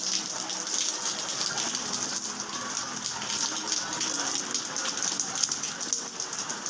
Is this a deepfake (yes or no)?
no